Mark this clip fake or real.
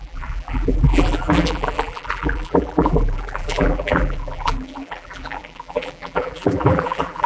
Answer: fake